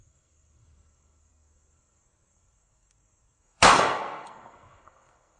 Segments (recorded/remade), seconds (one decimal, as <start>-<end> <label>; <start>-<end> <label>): 0.0-5.4 remade